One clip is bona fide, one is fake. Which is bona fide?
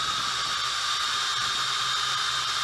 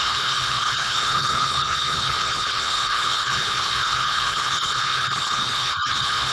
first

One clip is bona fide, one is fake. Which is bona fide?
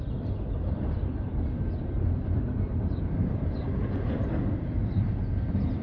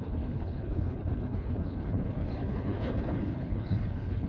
first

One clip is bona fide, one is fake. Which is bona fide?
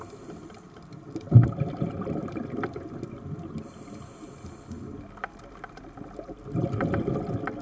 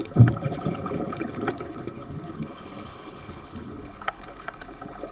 first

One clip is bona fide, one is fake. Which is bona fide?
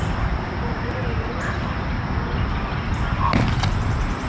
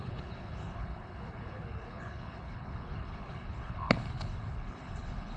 first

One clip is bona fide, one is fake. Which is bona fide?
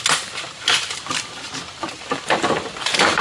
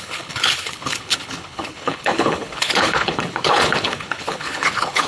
first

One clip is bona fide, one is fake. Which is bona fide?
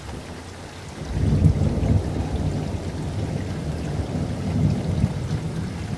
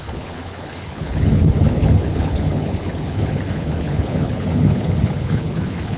first